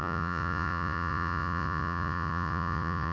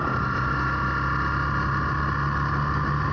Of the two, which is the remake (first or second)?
first